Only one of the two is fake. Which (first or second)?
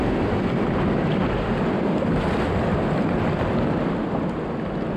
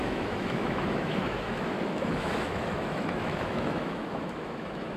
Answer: second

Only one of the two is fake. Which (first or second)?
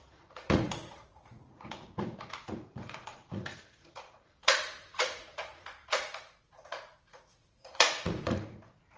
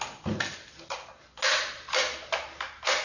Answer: first